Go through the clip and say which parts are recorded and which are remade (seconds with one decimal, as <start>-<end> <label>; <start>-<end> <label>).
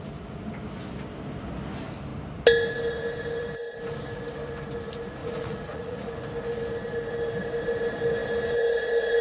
0.0-5.2 recorded; 5.2-6.1 remade; 6.1-9.2 recorded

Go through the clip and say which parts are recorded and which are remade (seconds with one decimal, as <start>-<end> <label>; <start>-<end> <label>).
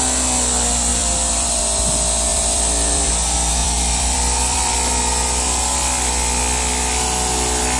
0.0-0.9 recorded; 0.9-1.6 remade; 1.6-2.3 recorded; 2.3-3.1 remade; 3.1-3.6 recorded; 3.6-4.7 remade; 4.7-7.8 recorded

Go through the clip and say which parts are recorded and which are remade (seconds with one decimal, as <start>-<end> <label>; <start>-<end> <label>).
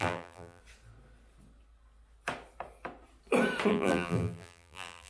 0.0-0.6 remade; 0.6-3.7 recorded; 3.7-5.1 remade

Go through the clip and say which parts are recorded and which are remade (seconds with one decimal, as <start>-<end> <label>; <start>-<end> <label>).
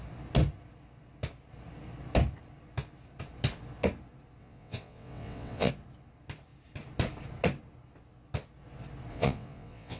0.0-4.4 recorded; 4.4-5.7 remade; 5.7-9.1 recorded; 9.1-10.0 remade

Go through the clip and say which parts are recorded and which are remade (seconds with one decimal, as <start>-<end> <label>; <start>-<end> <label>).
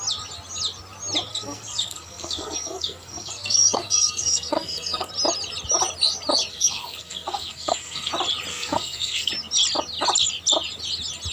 0.0-1.3 recorded; 1.3-5.1 remade; 5.1-6.5 recorded; 6.5-8.1 remade; 8.1-8.5 recorded; 8.5-9.3 remade; 9.3-11.3 recorded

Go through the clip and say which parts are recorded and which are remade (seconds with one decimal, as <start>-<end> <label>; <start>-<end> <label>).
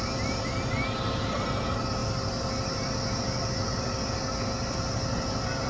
0.0-5.7 recorded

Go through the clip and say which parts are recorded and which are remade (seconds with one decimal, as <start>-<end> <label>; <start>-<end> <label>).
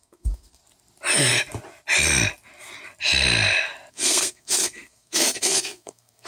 0.0-0.6 remade; 0.6-3.9 recorded; 3.9-6.3 remade